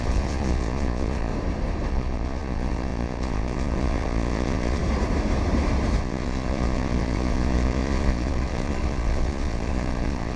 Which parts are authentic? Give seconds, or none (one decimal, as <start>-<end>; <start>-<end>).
1.3-1.9; 4.8-6.0